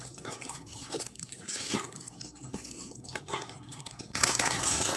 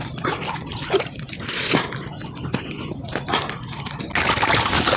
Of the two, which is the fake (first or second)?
first